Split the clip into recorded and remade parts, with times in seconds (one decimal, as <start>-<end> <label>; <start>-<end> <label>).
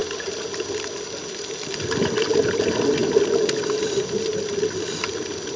0.0-5.6 recorded